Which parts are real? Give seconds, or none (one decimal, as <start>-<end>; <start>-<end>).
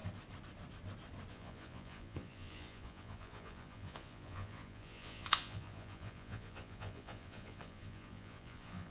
0.0-1.3